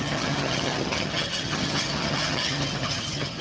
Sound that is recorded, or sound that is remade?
remade